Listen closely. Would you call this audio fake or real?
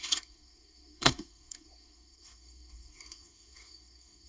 fake